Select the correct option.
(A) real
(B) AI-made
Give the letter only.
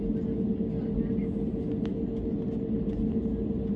A